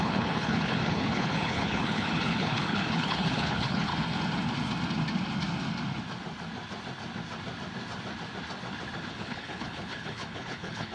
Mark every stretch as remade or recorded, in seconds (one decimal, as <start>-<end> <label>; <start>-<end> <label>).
0.0-3.9 remade; 3.9-9.1 recorded; 9.1-10.9 remade